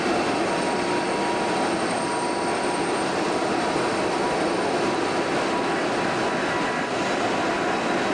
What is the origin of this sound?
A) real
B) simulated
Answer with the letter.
A